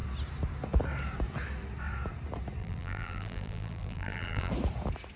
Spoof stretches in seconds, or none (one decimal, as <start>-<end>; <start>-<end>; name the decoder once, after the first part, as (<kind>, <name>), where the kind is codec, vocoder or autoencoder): 2.6-4.5 (vocoder, BigVGAN v2)